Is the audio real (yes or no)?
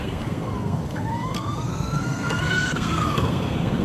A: no